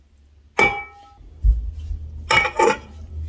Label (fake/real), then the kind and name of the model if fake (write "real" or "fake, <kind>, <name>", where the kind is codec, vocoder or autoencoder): real